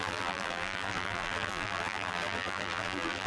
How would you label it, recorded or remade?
remade